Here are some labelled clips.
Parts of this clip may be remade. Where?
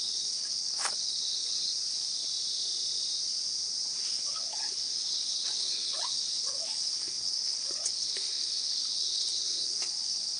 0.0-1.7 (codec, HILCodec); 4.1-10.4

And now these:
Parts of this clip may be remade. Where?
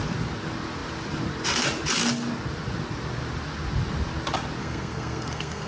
4.6-5.7 (codec, SNAC)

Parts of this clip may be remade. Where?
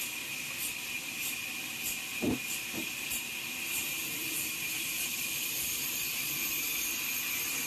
2.1-6.7 (vocoder, BigVGAN v2)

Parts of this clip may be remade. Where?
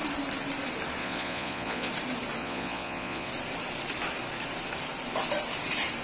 1.0-1.9 (vocoder, Vocos); 2.4-3.3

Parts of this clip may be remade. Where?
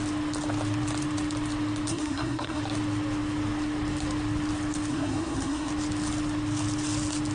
1.9-2.6 (codec, SNAC); 4.9-5.7